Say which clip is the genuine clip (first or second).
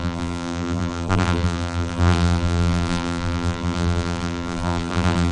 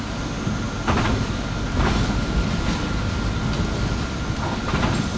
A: second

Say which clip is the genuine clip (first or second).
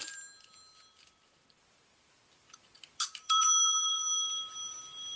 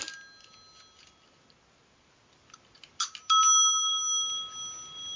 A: second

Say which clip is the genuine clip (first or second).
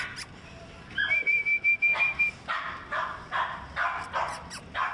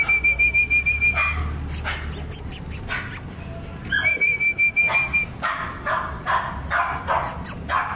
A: second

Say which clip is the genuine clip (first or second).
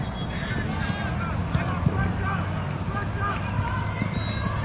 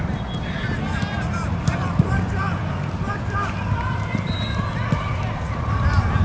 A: first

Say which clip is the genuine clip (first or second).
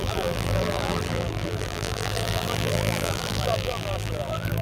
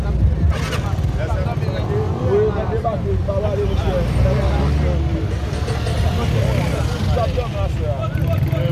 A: second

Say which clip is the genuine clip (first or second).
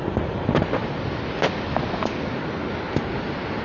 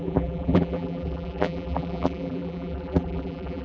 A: first